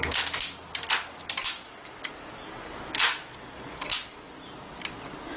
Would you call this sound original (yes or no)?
yes